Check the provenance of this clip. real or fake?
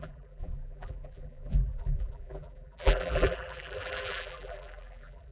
fake